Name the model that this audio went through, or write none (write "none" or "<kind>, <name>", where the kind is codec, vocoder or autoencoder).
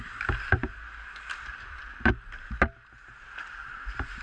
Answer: none